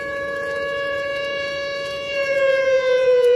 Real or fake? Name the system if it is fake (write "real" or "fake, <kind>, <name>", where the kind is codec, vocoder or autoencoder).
fake, vocoder, Vocos